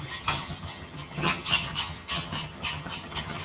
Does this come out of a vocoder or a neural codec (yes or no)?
yes